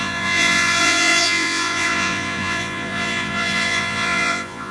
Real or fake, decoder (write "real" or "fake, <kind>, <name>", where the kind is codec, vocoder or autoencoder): fake, vocoder, Vocos